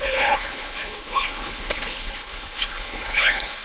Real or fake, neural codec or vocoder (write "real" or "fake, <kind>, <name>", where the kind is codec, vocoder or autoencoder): fake, codec, HILCodec